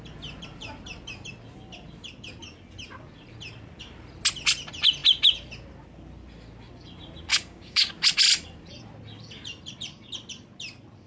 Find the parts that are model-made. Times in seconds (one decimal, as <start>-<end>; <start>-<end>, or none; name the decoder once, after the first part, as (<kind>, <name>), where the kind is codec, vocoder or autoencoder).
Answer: 7.3-7.9 (codec, DAC)